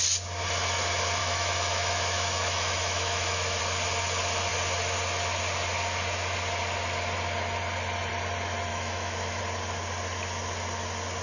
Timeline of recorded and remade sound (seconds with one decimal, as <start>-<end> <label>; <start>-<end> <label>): 0.0-1.2 recorded; 1.2-3.6 remade; 3.6-8.7 recorded; 8.7-9.4 remade; 9.4-11.2 recorded